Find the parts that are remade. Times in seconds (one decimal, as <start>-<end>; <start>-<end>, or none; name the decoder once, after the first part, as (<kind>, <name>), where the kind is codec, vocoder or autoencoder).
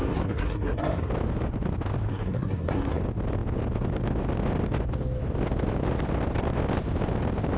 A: 0.0-1.1 (codec, SNAC); 2.1-3.0